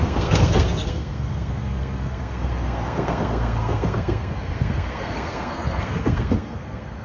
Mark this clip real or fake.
fake